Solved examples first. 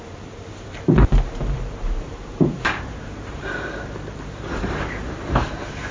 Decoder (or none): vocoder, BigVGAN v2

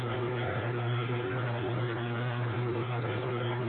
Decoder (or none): codec, SNAC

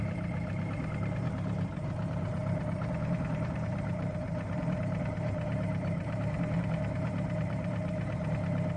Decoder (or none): vocoder, BigVGAN v2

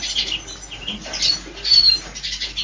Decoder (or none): none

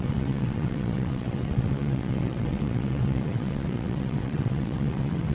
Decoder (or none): vocoder, WaveNeXt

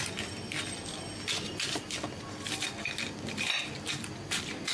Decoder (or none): none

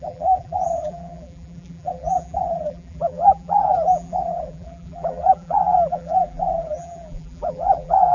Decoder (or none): vocoder, BigVGAN v2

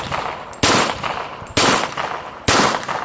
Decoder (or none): none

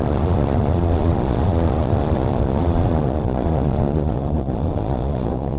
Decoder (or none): vocoder, Vocos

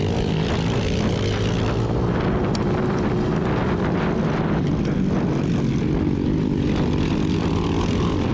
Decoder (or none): none